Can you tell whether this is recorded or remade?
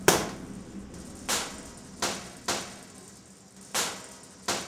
recorded